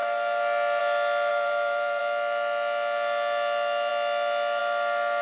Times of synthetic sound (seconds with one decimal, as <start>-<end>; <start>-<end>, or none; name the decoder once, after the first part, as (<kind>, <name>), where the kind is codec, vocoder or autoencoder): 1.3-2.0 (vocoder, BigVGAN v2)

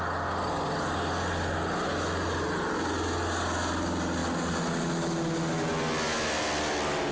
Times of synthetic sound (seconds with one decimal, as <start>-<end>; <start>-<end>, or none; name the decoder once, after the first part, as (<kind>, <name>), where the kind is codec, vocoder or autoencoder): none